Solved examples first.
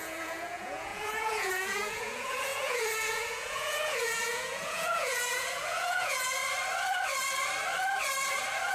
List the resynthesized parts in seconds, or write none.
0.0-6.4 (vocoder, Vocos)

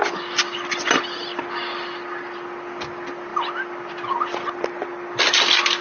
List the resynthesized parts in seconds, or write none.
none

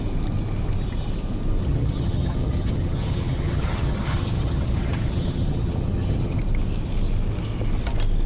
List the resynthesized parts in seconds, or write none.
1.6-6.4 (vocoder, HiFi-GAN)